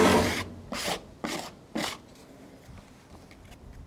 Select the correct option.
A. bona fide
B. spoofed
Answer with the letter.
A